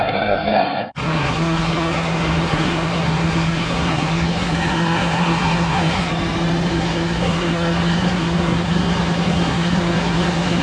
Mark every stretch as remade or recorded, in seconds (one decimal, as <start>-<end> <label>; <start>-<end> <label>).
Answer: 0.0-6.1 remade; 6.1-6.7 recorded; 6.7-10.6 remade